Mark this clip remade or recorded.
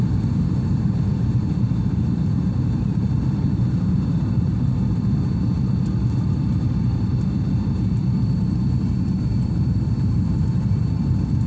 remade